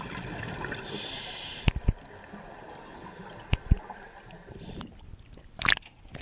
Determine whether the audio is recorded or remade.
recorded